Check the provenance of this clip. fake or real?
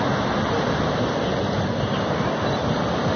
real